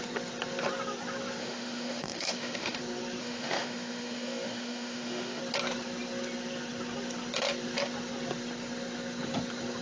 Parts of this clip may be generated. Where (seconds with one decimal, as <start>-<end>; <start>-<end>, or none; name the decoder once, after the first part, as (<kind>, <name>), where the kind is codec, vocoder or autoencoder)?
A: 1.4-2.8 (autoencoder, DAC-VAE); 3.2-5.4